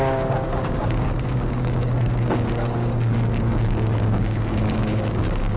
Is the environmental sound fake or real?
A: fake